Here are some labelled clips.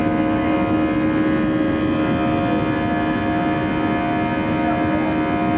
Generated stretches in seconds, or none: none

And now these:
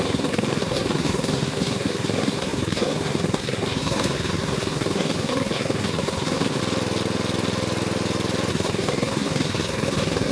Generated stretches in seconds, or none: 0.0-6.6; 8.5-10.3

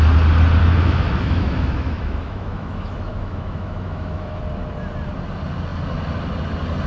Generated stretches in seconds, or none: 0.6-4.4

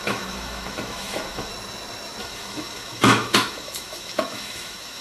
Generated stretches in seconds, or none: 0.0-1.5; 2.2-5.0

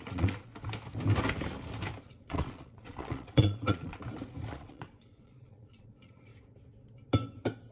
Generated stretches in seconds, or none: 0.0-0.5; 2.0-4.0; 4.5-6.3

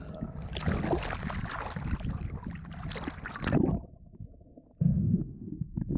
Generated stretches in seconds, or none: 5.0-5.6